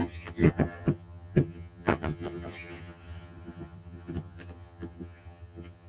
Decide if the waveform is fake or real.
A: fake